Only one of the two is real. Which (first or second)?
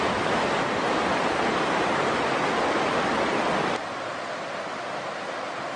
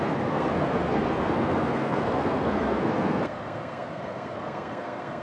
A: first